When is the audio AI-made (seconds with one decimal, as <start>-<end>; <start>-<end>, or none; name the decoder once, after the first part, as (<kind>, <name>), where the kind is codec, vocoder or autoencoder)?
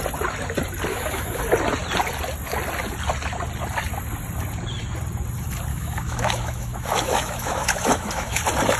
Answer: 0.9-1.4 (autoencoder, DAC-VAE); 5.7-8.4